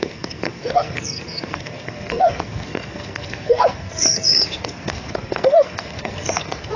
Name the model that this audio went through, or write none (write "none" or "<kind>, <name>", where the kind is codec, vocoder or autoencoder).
codec, SNAC